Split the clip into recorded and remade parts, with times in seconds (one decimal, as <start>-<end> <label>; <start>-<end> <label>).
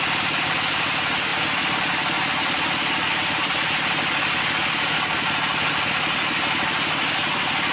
0.0-7.7 recorded